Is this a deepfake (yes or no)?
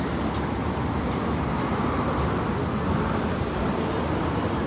no